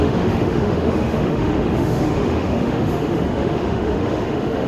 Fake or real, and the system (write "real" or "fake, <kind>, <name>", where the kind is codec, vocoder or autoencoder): fake, autoencoder, DAC-VAE